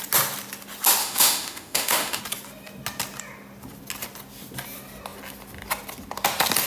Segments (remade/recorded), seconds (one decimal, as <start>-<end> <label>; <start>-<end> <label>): 0.0-1.0 recorded; 1.0-2.2 remade; 2.2-6.7 recorded

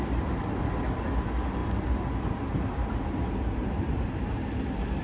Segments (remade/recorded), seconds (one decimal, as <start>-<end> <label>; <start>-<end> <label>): 0.0-1.6 recorded; 1.6-4.6 remade; 4.6-5.0 recorded

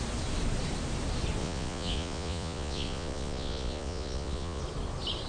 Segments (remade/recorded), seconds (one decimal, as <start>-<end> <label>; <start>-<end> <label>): 0.0-1.4 recorded; 1.4-4.6 remade; 4.6-5.3 recorded

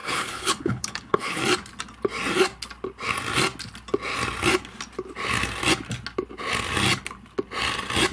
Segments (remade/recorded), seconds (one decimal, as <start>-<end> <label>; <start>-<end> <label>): 0.0-1.4 remade; 1.4-8.1 recorded

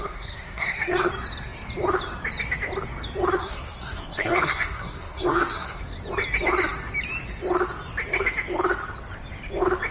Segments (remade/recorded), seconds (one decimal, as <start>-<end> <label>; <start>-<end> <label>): 0.0-1.1 remade; 1.1-3.4 recorded; 3.4-5.8 remade; 5.8-9.9 recorded

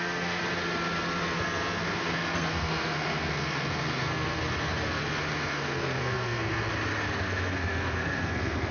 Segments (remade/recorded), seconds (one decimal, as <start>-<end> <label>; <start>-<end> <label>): 0.0-0.4 remade; 0.4-1.2 recorded; 1.2-4.4 remade; 4.4-5.3 recorded; 5.3-6.7 remade; 6.7-7.2 recorded; 7.2-8.7 remade

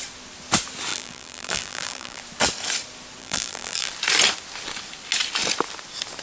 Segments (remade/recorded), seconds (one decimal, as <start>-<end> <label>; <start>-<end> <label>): 0.0-0.9 recorded; 0.9-2.2 remade; 2.2-3.2 recorded; 3.2-3.9 remade; 3.9-6.2 recorded

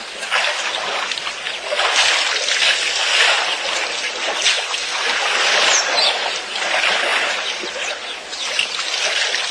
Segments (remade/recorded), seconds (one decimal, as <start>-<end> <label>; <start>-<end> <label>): 0.0-9.5 recorded